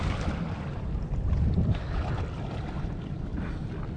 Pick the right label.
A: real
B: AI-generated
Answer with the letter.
A